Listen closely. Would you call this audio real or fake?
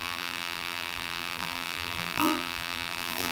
fake